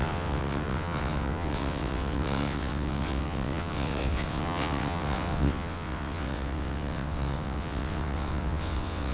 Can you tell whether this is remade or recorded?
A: remade